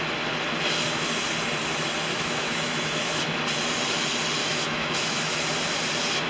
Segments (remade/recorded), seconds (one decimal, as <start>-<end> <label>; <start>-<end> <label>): 0.0-2.1 recorded; 2.1-3.2 remade; 3.2-4.4 recorded; 4.4-5.3 remade; 5.3-6.3 recorded